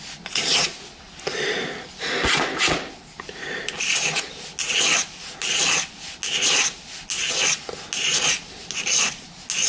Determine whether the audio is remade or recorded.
recorded